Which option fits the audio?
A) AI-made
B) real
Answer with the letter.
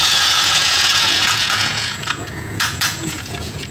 A